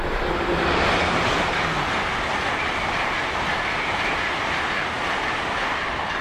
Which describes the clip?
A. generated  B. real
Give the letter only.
B